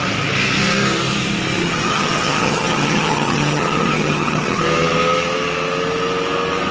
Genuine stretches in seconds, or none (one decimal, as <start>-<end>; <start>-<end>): 0.0-1.6; 4.6-6.7